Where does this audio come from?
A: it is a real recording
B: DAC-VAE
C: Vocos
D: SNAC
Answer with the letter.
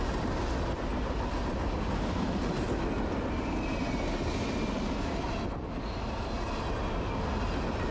A